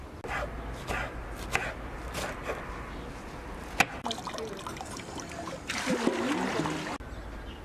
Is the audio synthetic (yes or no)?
no